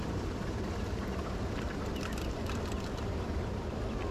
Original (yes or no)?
yes